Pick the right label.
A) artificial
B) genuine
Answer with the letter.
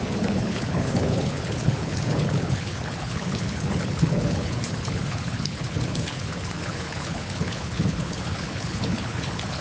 A